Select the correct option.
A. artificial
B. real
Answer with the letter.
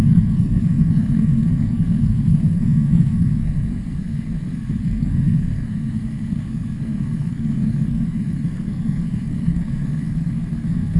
A